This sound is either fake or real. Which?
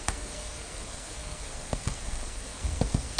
fake